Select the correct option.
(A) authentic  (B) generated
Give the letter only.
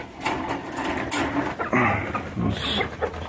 A